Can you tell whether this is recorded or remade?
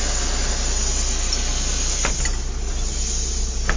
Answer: recorded